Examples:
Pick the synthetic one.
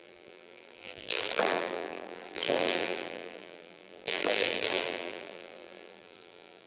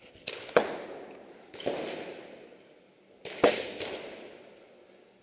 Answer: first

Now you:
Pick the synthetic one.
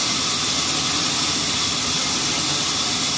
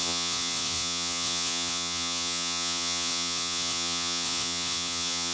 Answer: second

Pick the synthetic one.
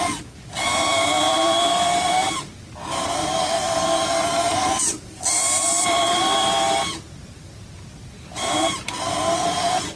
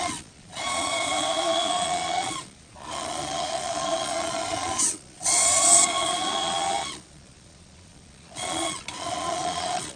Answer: second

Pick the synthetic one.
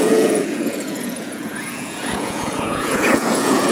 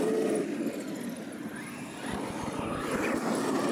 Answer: first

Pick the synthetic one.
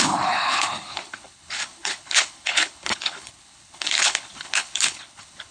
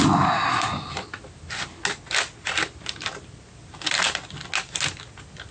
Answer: first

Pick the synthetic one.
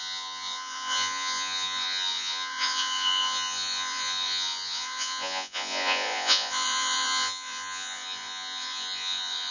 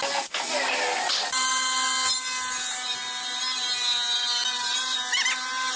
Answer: first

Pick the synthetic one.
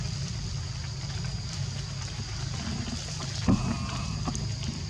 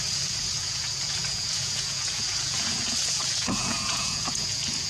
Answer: second